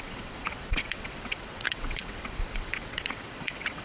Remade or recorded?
remade